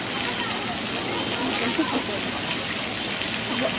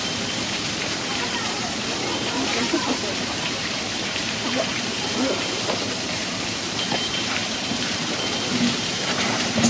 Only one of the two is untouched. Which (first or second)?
first